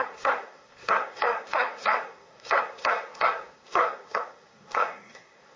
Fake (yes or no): yes